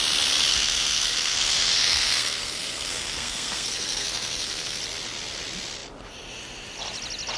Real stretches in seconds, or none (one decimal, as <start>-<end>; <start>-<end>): 0.0-0.5; 4.8-7.4